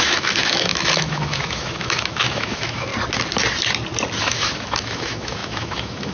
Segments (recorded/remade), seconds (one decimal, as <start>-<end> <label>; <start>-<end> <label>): 0.0-2.9 remade; 2.9-4.2 recorded; 4.2-6.1 remade